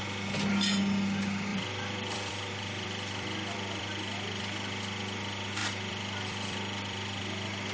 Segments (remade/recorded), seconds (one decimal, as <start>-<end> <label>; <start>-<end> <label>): 0.0-1.5 recorded; 1.5-4.4 remade; 4.4-5.6 recorded; 5.6-7.2 remade; 7.2-7.7 recorded